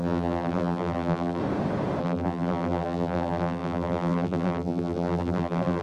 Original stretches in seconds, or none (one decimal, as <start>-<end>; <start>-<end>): 1.4-2.0